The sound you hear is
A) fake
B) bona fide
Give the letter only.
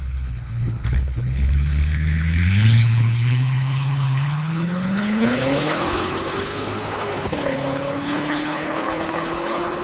A